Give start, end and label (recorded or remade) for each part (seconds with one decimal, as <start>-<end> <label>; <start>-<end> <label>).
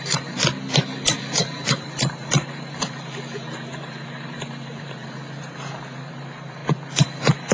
0.0-0.4 remade; 0.4-1.2 recorded; 1.2-6.6 remade; 6.6-7.5 recorded